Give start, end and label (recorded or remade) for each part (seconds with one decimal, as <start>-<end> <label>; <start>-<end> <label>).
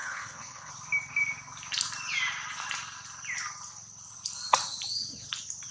0.0-0.7 remade; 0.7-5.7 recorded